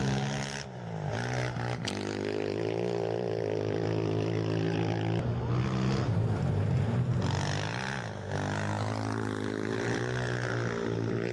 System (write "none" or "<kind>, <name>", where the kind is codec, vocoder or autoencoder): none